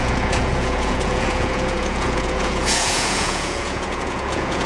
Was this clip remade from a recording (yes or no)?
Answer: yes